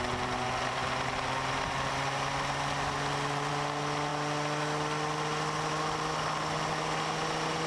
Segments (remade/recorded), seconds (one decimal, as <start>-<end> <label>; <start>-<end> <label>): 0.0-7.7 recorded